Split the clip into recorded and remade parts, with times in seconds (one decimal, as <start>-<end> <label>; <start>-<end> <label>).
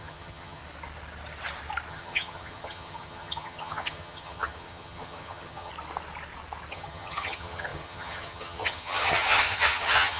0.0-0.6 remade; 0.6-1.9 recorded; 1.9-5.7 remade; 5.7-6.7 recorded; 6.7-10.2 remade